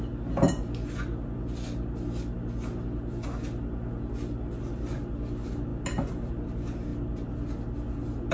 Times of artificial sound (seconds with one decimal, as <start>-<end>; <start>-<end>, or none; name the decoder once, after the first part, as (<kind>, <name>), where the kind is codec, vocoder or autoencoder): none